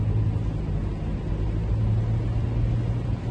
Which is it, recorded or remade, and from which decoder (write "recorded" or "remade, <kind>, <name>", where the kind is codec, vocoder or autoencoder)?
recorded